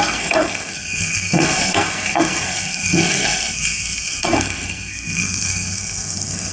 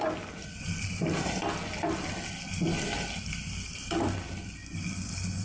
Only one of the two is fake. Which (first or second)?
first